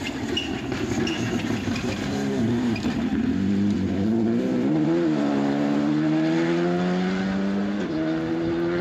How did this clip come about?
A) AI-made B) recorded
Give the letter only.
B